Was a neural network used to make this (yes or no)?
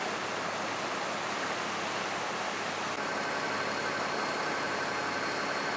no